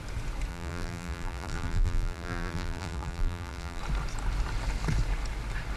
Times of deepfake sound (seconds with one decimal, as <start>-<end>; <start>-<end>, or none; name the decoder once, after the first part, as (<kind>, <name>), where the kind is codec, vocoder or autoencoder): 0.5-3.8 (vocoder, BigVGAN v2)